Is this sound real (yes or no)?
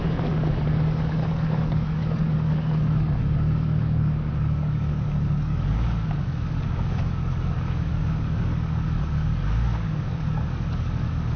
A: no